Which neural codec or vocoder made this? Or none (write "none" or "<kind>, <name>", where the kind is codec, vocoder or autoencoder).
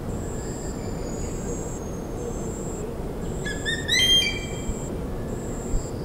none